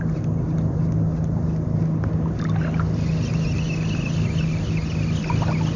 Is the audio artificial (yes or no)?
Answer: no